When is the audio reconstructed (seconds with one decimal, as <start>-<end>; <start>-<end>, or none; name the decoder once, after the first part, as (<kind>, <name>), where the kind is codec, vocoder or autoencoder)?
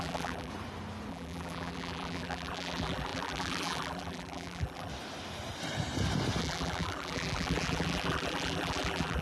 0.0-0.5 (vocoder, BigVGAN v2); 1.1-4.9; 6.4-9.2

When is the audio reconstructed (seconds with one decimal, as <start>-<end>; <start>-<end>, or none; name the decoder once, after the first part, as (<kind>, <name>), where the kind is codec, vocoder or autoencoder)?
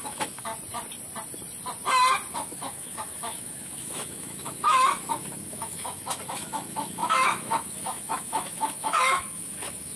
0.0-0.5 (autoencoder, DAC-VAE); 2.3-10.0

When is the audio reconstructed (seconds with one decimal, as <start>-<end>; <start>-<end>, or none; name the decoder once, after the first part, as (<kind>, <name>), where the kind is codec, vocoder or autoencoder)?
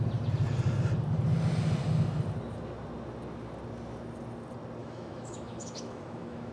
4.8-6.5 (autoencoder, DAC-VAE)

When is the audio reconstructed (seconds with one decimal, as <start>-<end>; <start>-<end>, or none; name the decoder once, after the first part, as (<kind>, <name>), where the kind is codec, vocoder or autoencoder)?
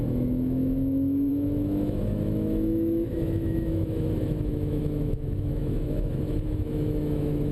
0.0-7.5 (autoencoder, DAC-VAE)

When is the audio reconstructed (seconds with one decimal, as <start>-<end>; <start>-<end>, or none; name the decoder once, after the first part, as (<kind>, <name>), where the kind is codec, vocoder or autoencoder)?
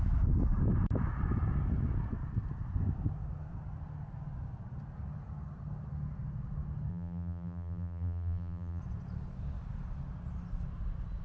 6.9-8.8 (vocoder, BigVGAN v2)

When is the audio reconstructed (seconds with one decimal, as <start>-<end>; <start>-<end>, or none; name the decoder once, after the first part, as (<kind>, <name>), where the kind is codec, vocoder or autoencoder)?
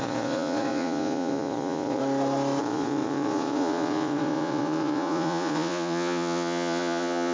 0.0-2.0 (vocoder, Vocos); 2.6-7.3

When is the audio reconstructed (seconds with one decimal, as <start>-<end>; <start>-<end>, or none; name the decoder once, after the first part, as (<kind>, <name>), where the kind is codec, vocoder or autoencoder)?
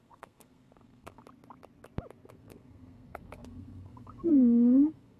0.0-1.2 (codec, SNAC); 2.3-5.2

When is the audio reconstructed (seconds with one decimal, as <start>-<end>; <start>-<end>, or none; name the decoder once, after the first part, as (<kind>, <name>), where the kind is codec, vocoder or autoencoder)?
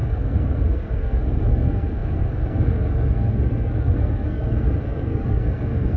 0.0-6.0 (codec, SNAC)